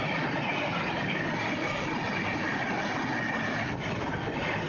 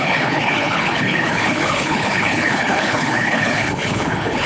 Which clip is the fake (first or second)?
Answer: second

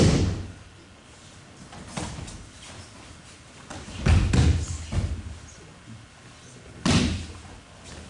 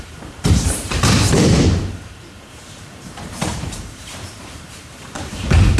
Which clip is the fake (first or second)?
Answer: second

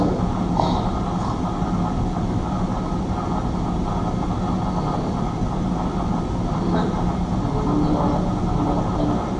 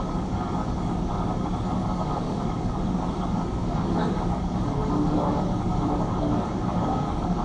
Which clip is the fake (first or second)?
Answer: second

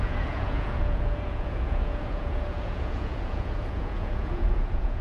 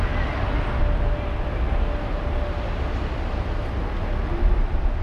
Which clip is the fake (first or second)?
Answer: first